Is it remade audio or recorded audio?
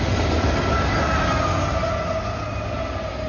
recorded